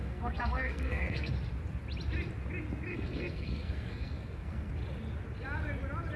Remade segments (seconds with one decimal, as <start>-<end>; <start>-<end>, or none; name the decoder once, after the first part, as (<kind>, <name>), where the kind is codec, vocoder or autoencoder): 0.0-1.3 (codec, SNAC); 2.9-4.7